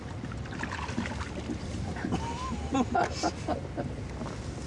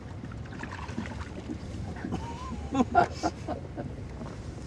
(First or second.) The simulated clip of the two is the second